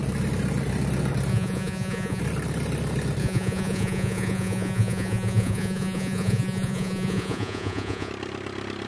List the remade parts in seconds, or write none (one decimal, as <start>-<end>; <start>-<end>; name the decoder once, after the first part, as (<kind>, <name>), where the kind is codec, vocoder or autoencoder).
1.3-2.2 (vocoder, Vocos); 3.2-8.1